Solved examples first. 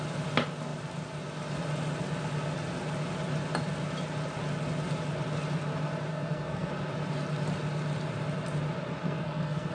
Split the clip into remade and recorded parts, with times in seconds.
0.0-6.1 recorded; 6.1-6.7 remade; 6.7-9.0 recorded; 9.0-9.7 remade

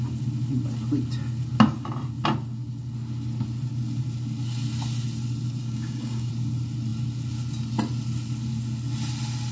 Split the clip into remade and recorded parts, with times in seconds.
0.0-5.6 recorded; 5.6-6.3 remade; 6.3-9.5 recorded

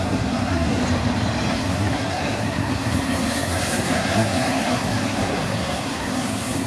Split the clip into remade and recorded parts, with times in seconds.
0.0-0.8 remade; 0.8-1.5 recorded; 1.5-6.7 remade

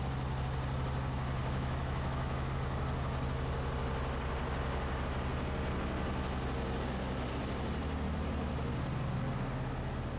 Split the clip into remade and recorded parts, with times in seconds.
0.0-1.4 recorded; 1.4-2.5 remade; 2.5-10.2 recorded

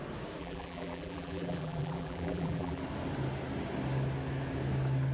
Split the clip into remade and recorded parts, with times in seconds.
0.0-0.4 recorded; 0.4-2.8 remade; 2.8-5.1 recorded